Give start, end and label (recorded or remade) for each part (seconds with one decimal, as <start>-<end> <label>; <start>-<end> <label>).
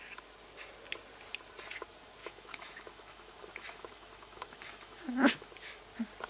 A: 0.0-2.2 recorded; 2.2-5.8 remade; 5.8-6.3 recorded